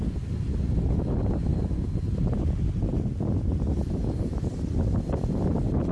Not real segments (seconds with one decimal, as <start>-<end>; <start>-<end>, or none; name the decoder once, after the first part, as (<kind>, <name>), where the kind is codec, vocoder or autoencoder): none